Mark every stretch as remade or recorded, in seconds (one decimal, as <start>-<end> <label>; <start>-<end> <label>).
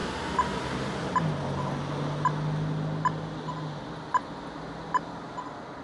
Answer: 0.0-5.8 recorded